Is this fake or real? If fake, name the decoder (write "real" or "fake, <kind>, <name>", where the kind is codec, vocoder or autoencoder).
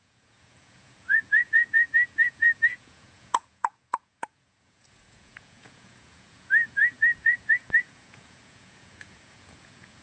fake, vocoder, Vocos